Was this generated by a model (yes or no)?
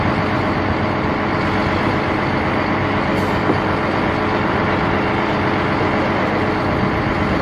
no